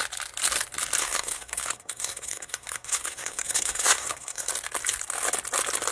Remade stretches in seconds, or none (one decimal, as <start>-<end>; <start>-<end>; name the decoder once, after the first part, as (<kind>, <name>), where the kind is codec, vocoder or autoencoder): 1.0-4.5 (codec, SNAC)